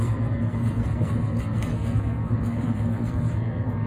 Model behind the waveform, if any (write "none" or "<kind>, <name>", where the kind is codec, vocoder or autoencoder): codec, SNAC